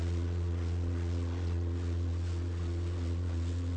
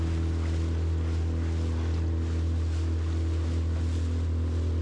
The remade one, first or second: first